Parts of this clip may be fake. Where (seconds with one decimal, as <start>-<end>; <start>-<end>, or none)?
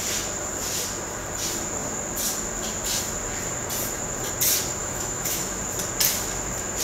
4.8-5.6